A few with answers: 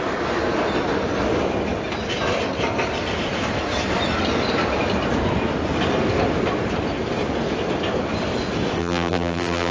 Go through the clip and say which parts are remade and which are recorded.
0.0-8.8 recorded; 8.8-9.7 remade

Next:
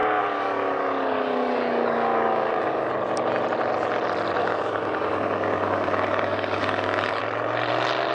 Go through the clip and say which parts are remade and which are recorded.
0.0-2.9 remade; 2.9-4.4 recorded; 4.4-7.2 remade; 7.2-8.1 recorded